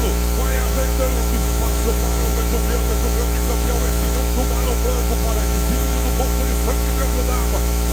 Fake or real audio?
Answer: fake